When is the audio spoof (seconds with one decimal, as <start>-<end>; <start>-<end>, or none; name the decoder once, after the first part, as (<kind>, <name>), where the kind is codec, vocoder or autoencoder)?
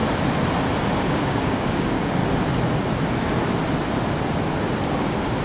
1.0-2.2 (codec, DAC); 4.9-5.4